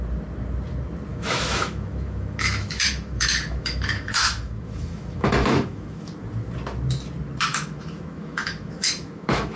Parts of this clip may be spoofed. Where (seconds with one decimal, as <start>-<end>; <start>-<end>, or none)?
1.1-6.1; 7.5-9.6